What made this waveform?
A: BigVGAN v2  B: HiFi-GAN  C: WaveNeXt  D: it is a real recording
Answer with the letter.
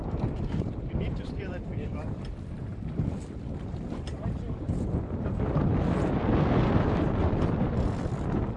A